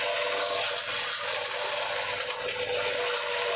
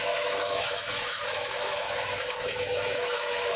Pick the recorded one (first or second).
first